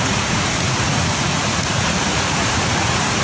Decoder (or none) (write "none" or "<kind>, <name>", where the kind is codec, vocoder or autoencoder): vocoder, Vocos